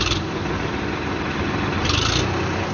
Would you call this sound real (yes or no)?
yes